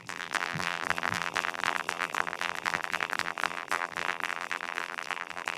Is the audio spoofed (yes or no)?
yes